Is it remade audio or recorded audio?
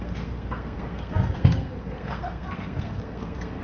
remade